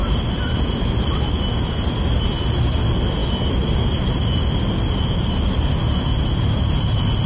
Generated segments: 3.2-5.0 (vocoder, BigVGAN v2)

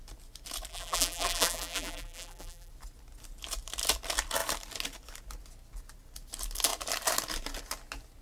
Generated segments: 0.7-2.7 (vocoder, BigVGAN v2)

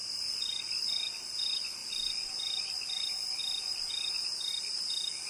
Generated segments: 0.0-0.6 (vocoder, BigVGAN v2); 1.8-2.3

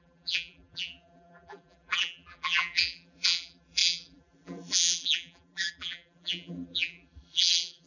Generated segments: 0.0-7.9 (vocoder, BigVGAN v2)

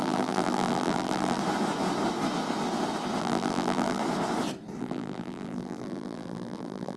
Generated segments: 0.0-1.4 (vocoder, BigVGAN v2); 3.2-4.0; 4.8-7.0